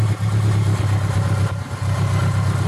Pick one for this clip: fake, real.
real